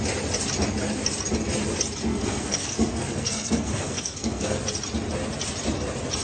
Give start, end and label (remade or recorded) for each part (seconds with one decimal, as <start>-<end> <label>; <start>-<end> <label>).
0.0-2.1 recorded; 2.1-4.6 remade; 4.6-6.2 recorded